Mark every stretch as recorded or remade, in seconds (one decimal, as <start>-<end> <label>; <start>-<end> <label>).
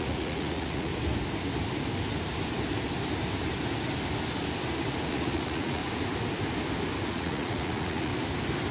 0.0-0.9 remade; 0.9-5.1 recorded; 5.1-5.8 remade; 5.8-7.1 recorded; 7.1-8.1 remade; 8.1-8.7 recorded